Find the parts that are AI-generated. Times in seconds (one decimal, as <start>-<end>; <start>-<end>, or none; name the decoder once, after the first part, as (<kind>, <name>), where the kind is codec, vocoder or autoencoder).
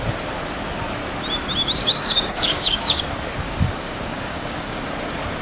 1.8-3.0 (codec, DAC); 3.4-4.8